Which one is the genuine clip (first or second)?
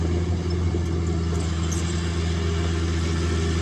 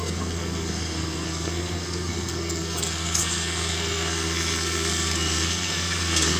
first